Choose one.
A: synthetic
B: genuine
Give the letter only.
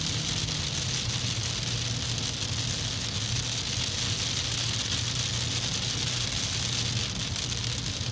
B